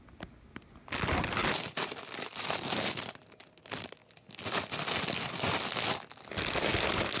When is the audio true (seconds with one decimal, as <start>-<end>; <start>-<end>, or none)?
0.0-7.2